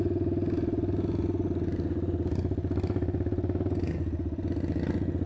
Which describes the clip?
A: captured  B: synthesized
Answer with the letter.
A